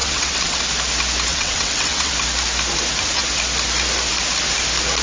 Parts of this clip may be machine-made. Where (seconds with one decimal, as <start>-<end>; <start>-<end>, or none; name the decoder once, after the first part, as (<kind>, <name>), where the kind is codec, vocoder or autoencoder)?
0.0-0.6 (vocoder, WaveNeXt); 1.3-2.1